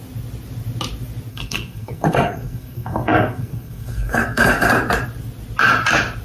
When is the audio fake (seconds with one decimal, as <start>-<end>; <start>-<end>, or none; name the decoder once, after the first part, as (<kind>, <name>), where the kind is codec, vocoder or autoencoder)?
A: 1.3-4.7 (codec, SNAC)